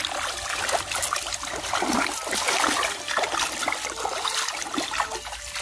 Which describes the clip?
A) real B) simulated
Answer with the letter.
A